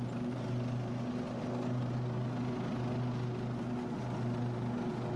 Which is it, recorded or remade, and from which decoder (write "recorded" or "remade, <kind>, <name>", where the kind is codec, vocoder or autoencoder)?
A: recorded